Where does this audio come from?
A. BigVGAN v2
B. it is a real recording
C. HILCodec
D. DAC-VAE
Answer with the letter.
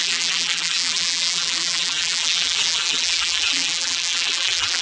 A